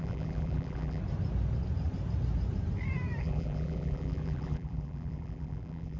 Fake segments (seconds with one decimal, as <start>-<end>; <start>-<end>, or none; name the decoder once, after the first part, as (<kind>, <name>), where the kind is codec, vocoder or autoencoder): 0.0-1.0 (vocoder, BigVGAN v2); 3.2-6.0